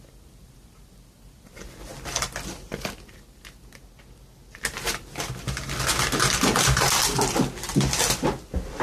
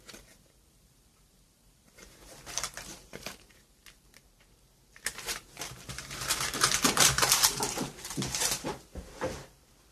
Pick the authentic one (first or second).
first